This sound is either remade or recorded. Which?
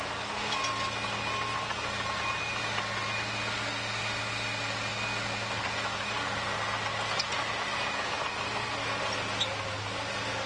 recorded